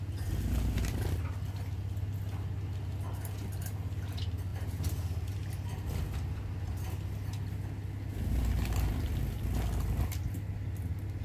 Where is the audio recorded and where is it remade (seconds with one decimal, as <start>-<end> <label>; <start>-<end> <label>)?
0.0-11.2 recorded